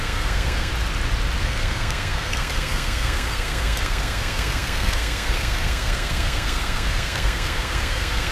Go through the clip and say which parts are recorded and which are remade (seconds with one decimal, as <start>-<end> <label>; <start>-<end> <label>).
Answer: 0.0-0.7 remade; 0.7-1.4 recorded; 1.4-8.3 remade